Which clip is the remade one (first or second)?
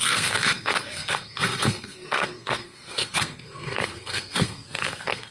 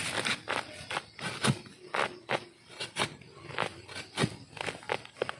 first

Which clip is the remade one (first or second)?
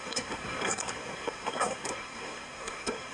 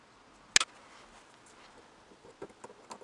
first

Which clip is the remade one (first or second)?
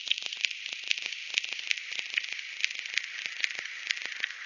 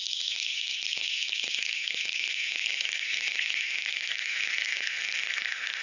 second